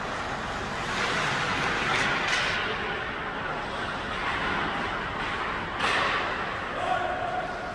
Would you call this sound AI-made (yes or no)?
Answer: no